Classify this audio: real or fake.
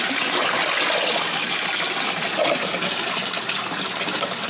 real